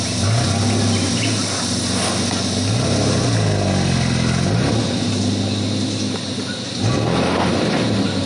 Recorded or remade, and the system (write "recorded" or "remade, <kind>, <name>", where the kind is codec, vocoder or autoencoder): recorded